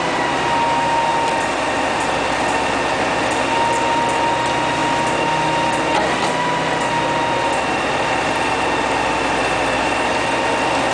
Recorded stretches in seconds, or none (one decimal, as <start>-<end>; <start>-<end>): 0.0-10.9